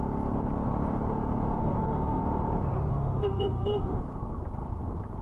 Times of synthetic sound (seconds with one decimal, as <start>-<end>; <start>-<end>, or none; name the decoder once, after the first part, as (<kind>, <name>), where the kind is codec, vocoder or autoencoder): 1.6-2.2 (autoencoder, DAC-VAE); 2.9-4.0